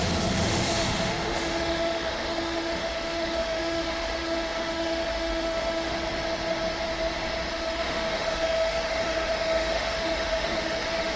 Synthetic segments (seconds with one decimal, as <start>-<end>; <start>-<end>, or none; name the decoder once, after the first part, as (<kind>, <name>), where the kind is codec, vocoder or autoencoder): 0.0-5.9 (autoencoder, DAC-VAE); 7.5-11.2